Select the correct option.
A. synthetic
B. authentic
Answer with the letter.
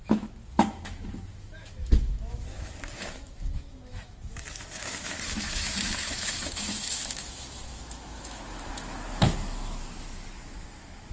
A